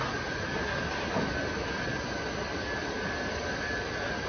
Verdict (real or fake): real